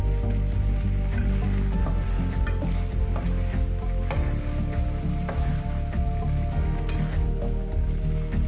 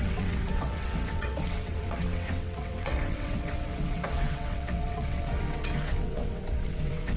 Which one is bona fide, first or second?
first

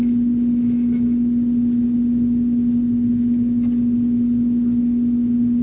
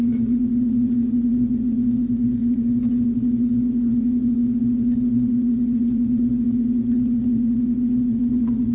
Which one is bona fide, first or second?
first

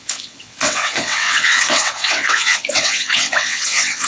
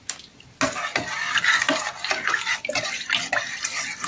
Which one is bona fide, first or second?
second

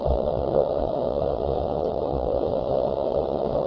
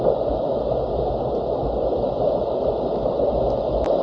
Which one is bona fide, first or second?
second